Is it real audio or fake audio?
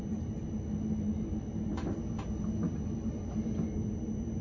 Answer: real